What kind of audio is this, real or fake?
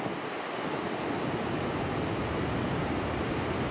real